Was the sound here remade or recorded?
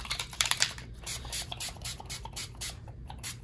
remade